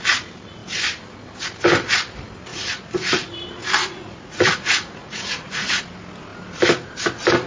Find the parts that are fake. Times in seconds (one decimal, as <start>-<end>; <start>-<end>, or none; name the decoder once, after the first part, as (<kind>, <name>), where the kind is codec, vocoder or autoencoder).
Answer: 2.5-3.3 (vocoder, Vocos); 3.8-5.8